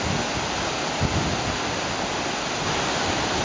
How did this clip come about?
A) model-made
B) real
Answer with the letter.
B